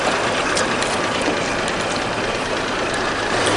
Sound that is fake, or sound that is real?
real